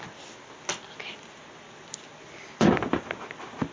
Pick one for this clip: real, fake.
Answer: real